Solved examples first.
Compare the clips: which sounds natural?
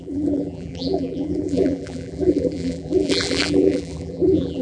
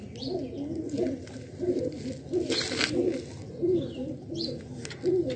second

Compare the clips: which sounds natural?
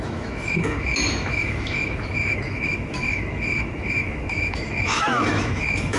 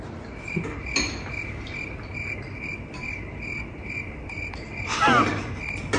second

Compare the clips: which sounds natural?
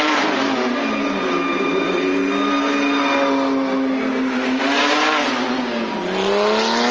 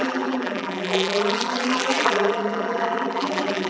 first